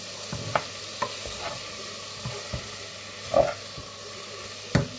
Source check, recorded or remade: recorded